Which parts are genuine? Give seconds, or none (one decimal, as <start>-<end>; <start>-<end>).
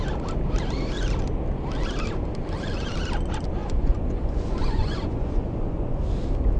0.0-3.6; 5.9-6.6